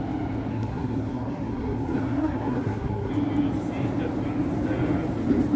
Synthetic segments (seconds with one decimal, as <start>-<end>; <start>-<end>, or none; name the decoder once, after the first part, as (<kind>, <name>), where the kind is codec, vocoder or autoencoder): 0.5-3.1 (codec, SNAC)